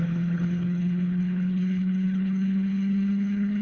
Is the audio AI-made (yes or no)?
yes